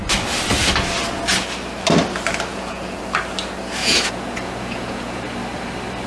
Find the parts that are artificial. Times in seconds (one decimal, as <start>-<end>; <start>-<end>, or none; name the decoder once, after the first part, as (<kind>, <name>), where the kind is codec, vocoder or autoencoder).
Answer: 2.5-3.0 (vocoder, Vocos); 3.8-5.2